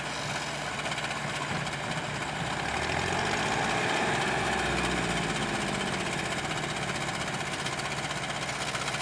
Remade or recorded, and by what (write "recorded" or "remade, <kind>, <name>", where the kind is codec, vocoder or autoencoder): recorded